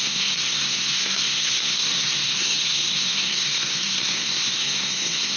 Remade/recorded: remade